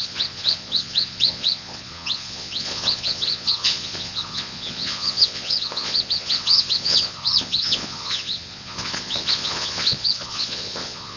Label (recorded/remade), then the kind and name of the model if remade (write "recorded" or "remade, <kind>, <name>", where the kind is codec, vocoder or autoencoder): remade, vocoder, Vocos